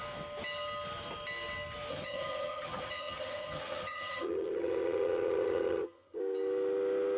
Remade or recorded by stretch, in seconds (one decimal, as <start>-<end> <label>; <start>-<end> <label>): 0.0-1.9 recorded; 1.9-6.2 remade; 6.2-7.2 recorded